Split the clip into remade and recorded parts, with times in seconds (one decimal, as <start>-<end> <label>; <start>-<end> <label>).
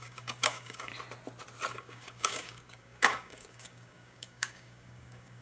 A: 0.0-0.9 remade; 0.9-1.7 recorded; 1.7-5.4 remade